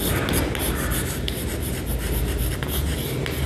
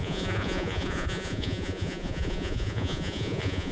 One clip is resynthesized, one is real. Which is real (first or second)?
first